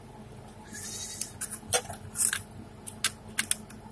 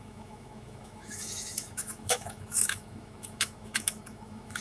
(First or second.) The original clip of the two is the first